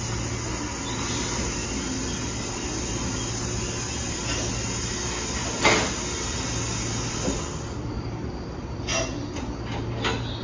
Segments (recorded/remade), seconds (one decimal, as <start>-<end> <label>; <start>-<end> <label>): 0.0-10.4 recorded